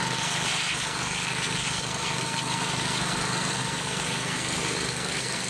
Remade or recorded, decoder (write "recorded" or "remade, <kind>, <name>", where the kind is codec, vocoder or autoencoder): remade, codec, SNAC